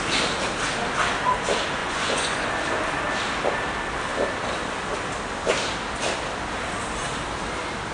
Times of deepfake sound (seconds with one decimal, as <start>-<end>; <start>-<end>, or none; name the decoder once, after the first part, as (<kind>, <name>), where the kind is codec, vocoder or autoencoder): 1.8-2.5 (vocoder, Vocos)